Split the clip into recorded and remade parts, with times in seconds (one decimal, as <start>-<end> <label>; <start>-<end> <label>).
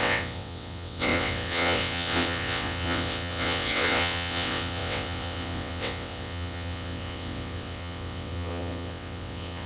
0.0-9.7 remade